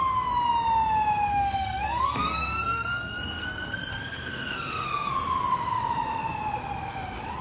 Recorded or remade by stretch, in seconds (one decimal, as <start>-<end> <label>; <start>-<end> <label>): 0.0-1.3 recorded; 1.3-5.1 remade; 5.1-7.4 recorded